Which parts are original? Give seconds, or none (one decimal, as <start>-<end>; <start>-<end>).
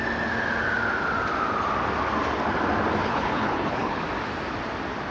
0.0-3.0; 4.0-5.1